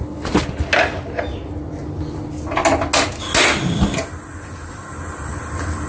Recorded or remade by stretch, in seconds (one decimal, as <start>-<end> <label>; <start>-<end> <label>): 0.0-5.9 recorded